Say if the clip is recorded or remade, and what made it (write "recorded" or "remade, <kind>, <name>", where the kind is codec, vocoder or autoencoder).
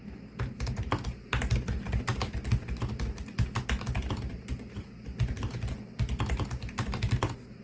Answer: recorded